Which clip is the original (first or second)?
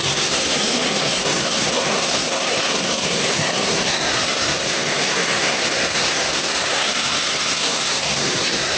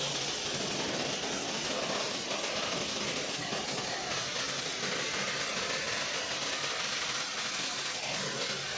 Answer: second